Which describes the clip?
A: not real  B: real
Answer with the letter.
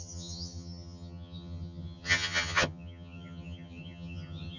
A